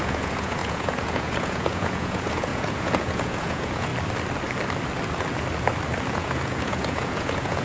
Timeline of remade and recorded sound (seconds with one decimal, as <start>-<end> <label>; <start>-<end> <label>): 0.0-3.9 remade; 3.9-6.1 recorded; 6.1-7.6 remade